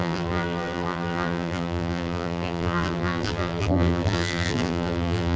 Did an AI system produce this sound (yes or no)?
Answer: yes